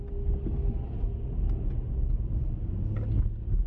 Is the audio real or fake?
real